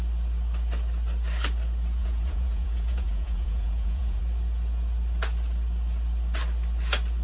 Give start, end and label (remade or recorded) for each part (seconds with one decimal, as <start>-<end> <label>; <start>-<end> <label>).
0.0-2.0 recorded; 2.0-4.2 remade; 4.2-7.2 recorded